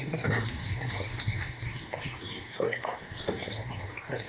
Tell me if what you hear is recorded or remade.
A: remade